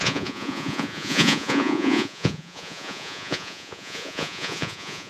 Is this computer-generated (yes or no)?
yes